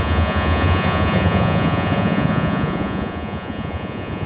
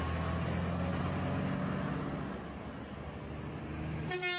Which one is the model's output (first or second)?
first